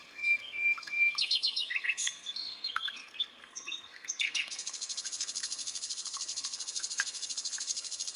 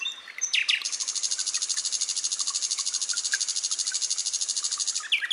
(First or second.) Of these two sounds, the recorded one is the second